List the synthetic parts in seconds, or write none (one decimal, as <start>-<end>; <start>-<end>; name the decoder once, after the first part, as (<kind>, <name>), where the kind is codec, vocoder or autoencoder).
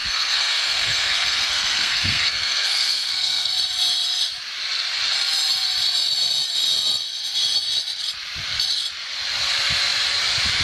0.0-3.5 (codec, SNAC)